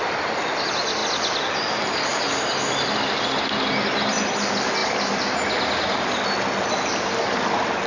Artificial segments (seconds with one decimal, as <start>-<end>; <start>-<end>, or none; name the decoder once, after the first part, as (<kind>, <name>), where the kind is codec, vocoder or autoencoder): none